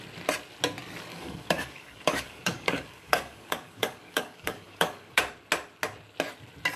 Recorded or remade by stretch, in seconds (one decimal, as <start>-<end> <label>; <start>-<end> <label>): 0.0-1.1 recorded; 1.1-5.2 remade; 5.2-6.8 recorded